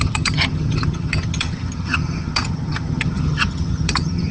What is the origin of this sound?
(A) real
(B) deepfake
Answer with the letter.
B